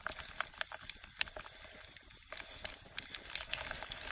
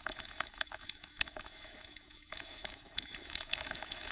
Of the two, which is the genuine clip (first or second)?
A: first